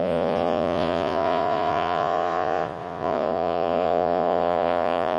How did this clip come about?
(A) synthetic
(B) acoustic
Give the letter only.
A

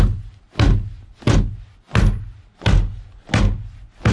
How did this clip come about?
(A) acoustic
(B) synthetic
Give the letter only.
A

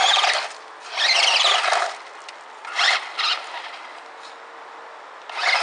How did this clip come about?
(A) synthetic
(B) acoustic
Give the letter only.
B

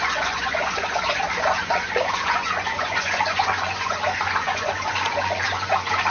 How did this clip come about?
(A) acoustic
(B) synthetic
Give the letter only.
B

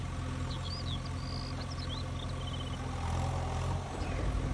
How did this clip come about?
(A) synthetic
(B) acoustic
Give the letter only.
B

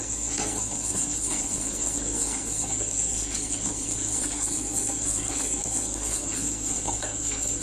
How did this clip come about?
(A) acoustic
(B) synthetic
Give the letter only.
B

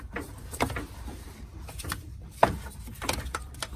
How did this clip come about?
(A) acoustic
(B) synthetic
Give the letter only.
B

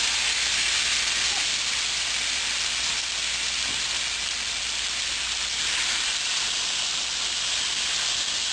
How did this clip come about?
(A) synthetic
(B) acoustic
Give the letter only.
B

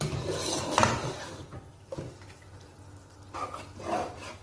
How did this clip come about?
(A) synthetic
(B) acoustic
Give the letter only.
B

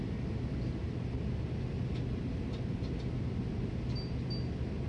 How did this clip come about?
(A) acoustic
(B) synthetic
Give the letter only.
A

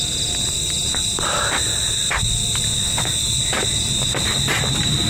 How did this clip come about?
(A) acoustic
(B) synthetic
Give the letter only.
A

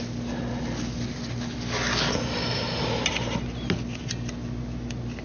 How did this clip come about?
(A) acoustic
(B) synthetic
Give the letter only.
A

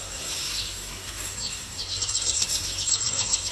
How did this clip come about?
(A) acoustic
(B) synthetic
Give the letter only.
B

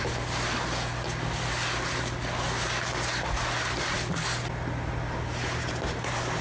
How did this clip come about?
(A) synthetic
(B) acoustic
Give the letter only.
B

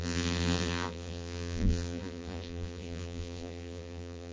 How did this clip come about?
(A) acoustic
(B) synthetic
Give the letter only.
B